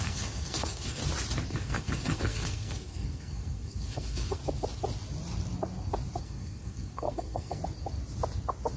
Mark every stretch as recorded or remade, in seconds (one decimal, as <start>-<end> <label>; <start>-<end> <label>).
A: 0.0-1.0 remade; 1.0-1.5 recorded; 1.5-4.4 remade; 4.4-6.2 recorded; 6.2-7.6 remade; 7.6-8.8 recorded